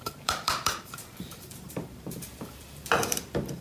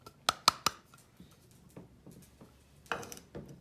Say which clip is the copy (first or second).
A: first